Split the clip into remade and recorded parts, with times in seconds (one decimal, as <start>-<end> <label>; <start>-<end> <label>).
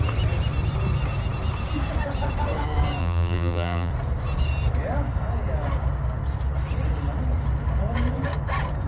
0.0-3.0 recorded; 3.0-3.9 remade; 3.9-8.9 recorded